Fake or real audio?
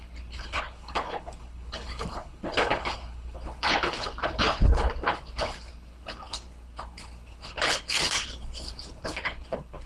fake